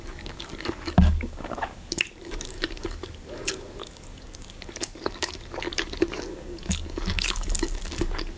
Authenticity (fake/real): fake